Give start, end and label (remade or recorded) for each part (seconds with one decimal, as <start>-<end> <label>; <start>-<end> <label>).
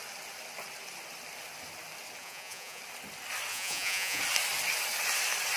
0.0-2.2 recorded; 2.2-2.8 remade; 2.8-3.5 recorded; 3.5-4.2 remade; 4.2-5.6 recorded